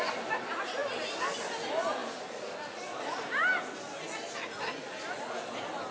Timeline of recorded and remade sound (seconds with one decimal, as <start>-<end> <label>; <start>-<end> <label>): 0.0-5.9 recorded